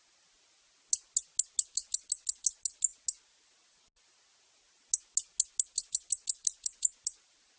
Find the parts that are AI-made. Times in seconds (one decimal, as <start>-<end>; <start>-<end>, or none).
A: none